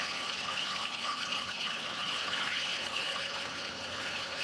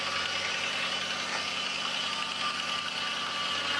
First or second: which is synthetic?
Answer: first